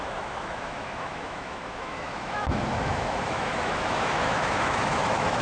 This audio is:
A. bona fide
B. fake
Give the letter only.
B